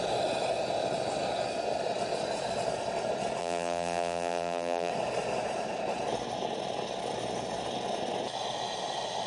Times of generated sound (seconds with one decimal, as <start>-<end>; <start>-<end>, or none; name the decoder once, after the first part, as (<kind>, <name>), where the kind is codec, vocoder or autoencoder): 3.4-4.9 (vocoder, BigVGAN v2)